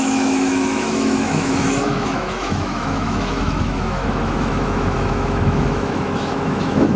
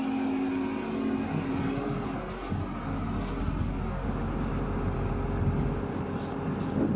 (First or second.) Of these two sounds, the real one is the second